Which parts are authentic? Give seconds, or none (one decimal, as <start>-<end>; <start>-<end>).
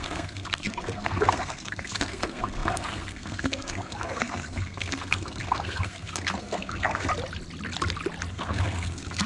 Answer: 7.1-8.3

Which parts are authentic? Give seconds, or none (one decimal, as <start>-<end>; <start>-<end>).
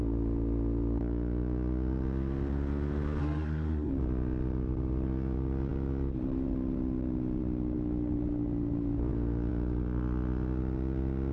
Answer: 0.0-3.2; 3.9-11.3